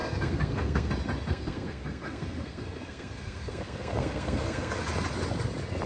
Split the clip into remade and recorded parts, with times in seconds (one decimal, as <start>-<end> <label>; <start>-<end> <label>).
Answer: 0.0-0.9 remade; 0.9-1.3 recorded; 1.3-4.8 remade; 4.8-5.9 recorded